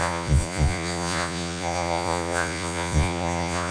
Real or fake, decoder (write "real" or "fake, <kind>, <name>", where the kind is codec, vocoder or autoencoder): fake, vocoder, Vocos